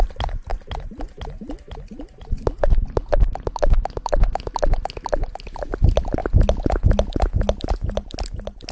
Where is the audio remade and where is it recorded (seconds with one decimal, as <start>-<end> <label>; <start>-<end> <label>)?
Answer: 0.0-8.7 recorded